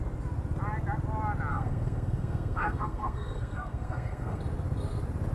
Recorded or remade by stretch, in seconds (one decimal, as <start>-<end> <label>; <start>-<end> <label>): 0.0-1.5 recorded; 1.5-4.4 remade; 4.4-5.3 recorded